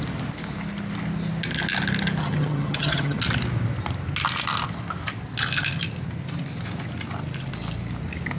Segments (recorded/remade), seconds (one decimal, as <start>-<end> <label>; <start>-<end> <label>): 0.0-2.2 recorded; 2.2-3.2 remade; 3.2-8.4 recorded